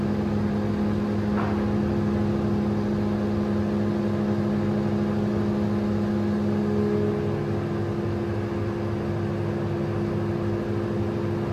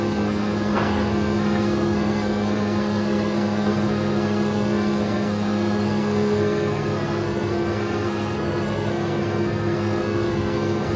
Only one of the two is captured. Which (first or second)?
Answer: first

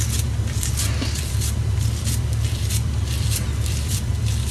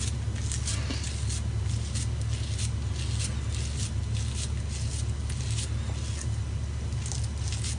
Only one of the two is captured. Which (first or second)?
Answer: second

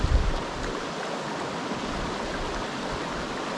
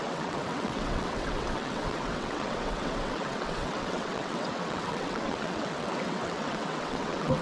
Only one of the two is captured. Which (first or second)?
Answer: first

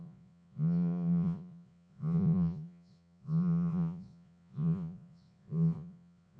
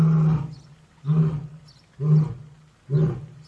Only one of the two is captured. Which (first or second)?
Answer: second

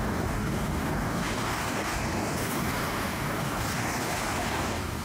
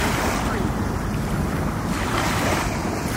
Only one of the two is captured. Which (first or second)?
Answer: second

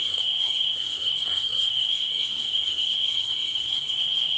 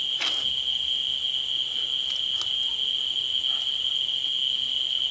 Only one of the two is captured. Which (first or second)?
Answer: second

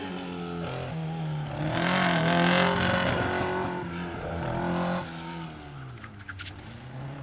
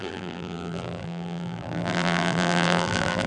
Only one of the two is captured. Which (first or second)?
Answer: first